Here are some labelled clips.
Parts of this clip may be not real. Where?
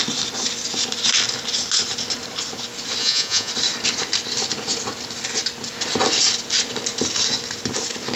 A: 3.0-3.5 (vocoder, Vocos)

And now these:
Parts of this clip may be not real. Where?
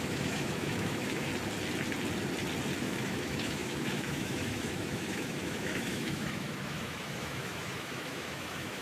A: 0.0-1.3 (autoencoder, DAC-VAE); 2.8-8.8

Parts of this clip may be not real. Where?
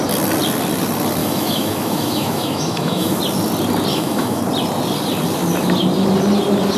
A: 1.2-3.2 (autoencoder, DAC-VAE); 3.9-4.4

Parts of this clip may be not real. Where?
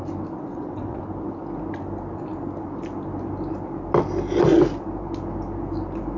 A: 0.5-1.0 (vocoder, WaveNeXt)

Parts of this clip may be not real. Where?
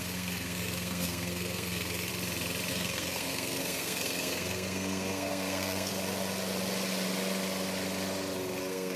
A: 0.0-2.1 (codec, SNAC); 2.7-5.9; 8.6-9.0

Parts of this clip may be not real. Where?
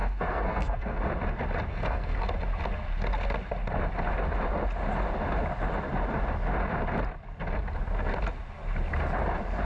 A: 0.0-1.0 (codec, SNAC); 1.7-2.2